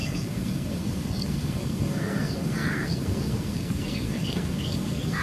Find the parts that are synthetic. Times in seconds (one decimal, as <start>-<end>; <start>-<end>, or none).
0.0-5.2

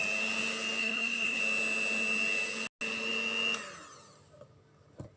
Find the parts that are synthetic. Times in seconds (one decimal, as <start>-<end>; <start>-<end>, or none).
0.8-1.4

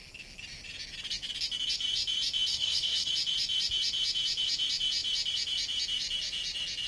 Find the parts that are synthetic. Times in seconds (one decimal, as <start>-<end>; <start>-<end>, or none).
2.5-3.1

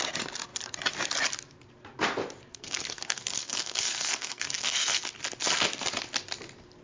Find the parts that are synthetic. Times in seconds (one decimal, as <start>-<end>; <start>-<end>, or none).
2.5-5.0

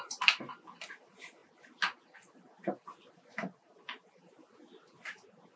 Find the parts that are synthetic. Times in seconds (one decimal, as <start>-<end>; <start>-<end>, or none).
none

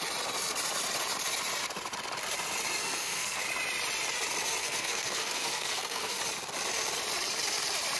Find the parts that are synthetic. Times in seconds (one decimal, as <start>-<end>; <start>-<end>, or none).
2.8-3.4; 4.6-6.2

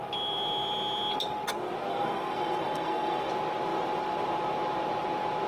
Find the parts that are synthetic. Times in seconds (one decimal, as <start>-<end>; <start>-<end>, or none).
1.9-3.3

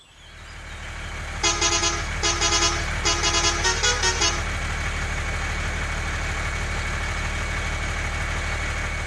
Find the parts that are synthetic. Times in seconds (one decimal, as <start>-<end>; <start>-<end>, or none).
none